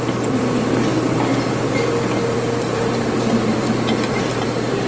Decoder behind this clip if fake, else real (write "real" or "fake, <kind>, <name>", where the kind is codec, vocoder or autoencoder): fake, vocoder, BigVGAN v2